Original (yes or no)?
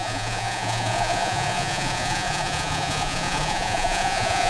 no